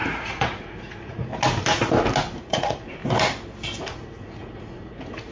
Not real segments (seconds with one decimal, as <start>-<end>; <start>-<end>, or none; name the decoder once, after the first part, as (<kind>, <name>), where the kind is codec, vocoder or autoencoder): 0.0-1.3 (vocoder, Vocos); 2.4-3.0; 3.8-5.3